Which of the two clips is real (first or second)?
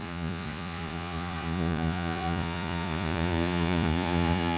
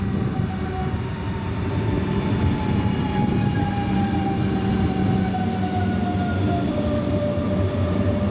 second